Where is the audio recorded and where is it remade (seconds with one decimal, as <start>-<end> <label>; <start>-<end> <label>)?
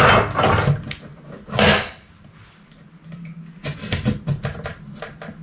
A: 0.0-5.4 recorded